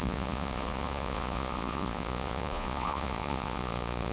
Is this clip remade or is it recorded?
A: remade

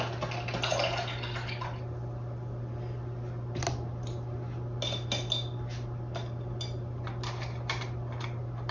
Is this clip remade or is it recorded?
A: recorded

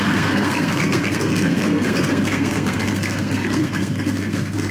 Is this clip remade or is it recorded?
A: remade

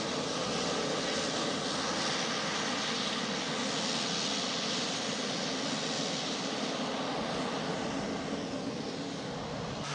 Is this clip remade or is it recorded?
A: recorded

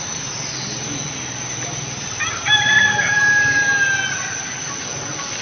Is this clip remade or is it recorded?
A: recorded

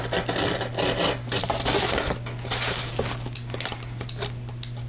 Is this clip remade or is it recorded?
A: recorded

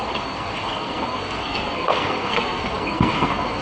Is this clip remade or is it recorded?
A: remade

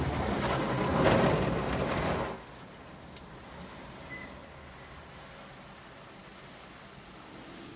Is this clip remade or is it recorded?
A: recorded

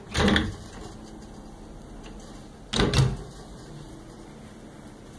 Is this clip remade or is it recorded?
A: recorded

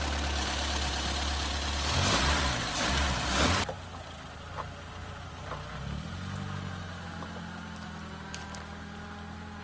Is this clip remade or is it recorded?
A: recorded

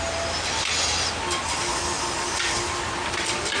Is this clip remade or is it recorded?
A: recorded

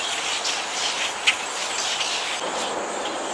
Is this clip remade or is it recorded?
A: recorded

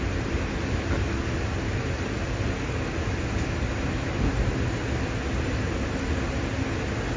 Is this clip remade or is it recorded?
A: recorded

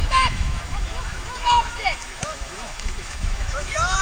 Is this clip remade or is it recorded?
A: remade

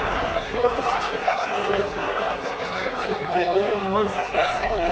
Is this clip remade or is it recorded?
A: remade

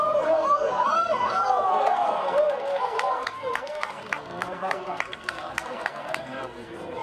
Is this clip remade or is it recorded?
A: remade